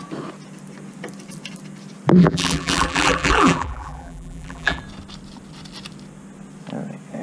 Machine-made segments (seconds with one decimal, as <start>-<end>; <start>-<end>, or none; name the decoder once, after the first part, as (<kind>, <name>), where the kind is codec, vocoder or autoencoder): 2.2-4.8 (vocoder, BigVGAN v2)